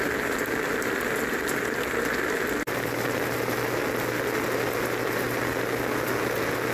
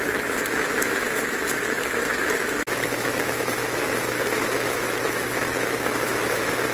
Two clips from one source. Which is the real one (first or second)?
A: first